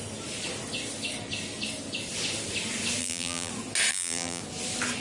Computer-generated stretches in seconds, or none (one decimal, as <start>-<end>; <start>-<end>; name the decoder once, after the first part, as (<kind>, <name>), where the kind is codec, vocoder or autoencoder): 3.0-3.5 (vocoder, BigVGAN v2); 3.9-4.4